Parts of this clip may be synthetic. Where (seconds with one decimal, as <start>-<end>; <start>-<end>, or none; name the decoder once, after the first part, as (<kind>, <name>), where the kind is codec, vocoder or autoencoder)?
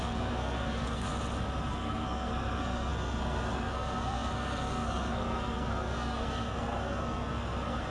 0.0-1.1 (codec, SNAC); 1.7-7.9